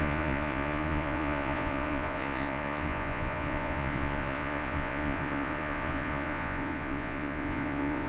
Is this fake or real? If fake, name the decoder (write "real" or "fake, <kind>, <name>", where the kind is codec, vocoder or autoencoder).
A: fake, vocoder, Vocos